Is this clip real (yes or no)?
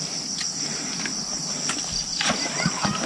yes